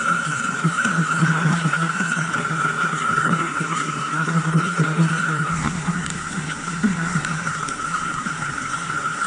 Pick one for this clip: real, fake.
fake